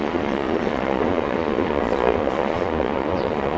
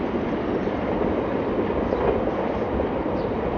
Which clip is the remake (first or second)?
first